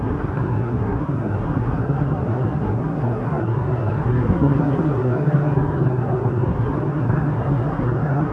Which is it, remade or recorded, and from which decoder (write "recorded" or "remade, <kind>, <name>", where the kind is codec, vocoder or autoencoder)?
remade, codec, SNAC